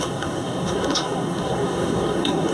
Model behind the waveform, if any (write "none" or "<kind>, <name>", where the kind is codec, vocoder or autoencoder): codec, SNAC